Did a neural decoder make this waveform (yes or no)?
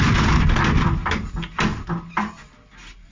no